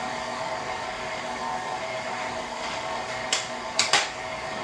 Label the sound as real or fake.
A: fake